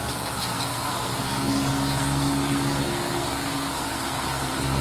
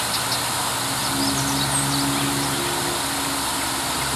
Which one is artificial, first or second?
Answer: first